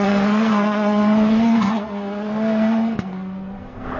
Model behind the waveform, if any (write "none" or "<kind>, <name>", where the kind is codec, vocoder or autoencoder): codec, SNAC